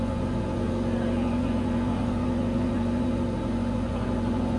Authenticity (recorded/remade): remade